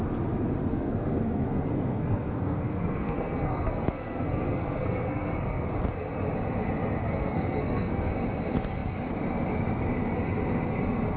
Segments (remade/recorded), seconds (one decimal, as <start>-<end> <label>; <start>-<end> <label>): 0.0-0.7 recorded; 0.7-5.7 remade; 5.7-7.0 recorded; 7.0-8.1 remade; 8.1-11.2 recorded